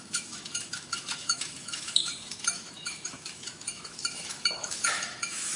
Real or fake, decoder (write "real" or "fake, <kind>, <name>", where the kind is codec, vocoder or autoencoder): fake, autoencoder, DAC-VAE